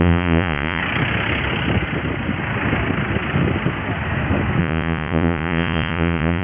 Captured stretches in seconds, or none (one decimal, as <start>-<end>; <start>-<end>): 0.8-4.6